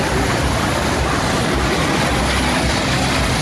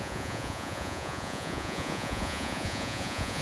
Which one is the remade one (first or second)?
second